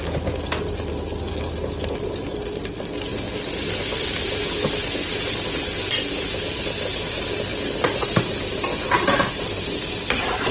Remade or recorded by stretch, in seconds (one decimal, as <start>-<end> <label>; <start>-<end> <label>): 0.0-7.5 recorded; 7.5-8.1 remade; 8.1-8.7 recorded; 8.7-9.9 remade; 9.9-10.5 recorded